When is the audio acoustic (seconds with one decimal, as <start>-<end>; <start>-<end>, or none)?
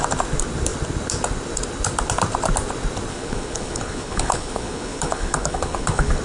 0.0-3.1